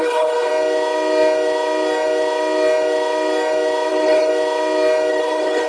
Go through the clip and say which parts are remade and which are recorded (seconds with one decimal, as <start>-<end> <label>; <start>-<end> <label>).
0.0-0.5 remade; 0.5-3.9 recorded; 3.9-4.3 remade; 4.3-5.1 recorded; 5.1-5.7 remade